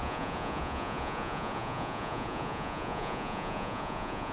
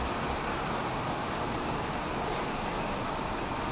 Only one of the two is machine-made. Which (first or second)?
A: first